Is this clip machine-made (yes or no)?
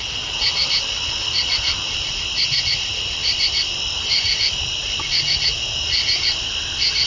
no